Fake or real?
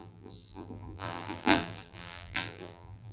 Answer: fake